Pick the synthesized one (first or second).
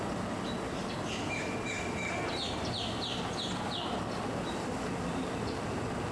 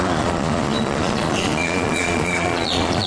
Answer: second